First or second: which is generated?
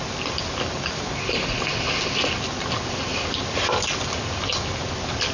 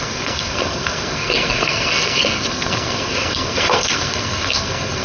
second